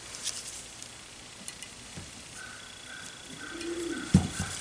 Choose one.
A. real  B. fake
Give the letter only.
A